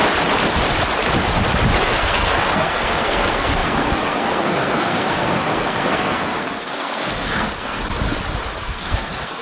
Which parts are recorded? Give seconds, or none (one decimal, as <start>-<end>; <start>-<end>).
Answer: 0.0-1.8; 7.8-8.6